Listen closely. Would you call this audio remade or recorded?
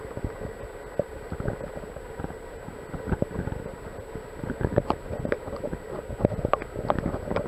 recorded